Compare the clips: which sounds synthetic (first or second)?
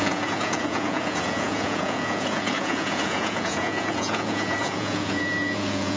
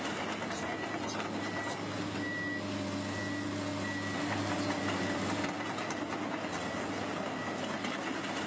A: first